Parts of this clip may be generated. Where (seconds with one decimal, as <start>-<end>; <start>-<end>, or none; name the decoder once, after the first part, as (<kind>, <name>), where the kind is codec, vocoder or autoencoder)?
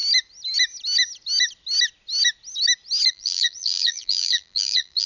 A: 3.1-5.1 (vocoder, BigVGAN v2)